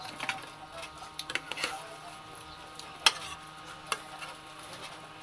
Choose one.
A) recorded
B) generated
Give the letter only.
A